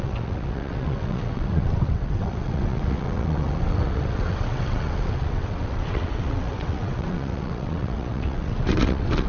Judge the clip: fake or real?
fake